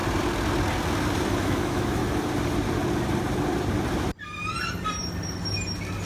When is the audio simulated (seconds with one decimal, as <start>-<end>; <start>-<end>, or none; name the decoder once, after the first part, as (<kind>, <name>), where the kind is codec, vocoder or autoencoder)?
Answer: 1.3-2.0 (autoencoder, DAC-VAE)